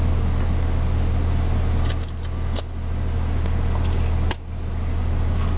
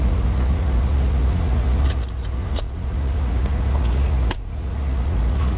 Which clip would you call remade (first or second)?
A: second